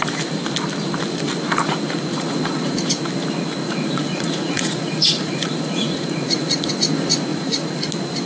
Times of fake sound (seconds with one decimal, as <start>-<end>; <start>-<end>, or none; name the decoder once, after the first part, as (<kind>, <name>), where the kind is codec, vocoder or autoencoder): 2.1-2.9 (vocoder, Vocos); 3.6-6.7; 7.3-7.9

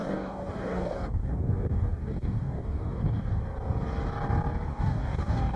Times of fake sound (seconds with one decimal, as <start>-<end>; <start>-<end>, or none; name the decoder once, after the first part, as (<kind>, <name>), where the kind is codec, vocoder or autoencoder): 0.0-3.4 (codec, DAC); 4.7-5.6